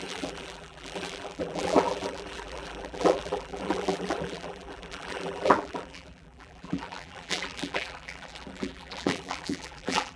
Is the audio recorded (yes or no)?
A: no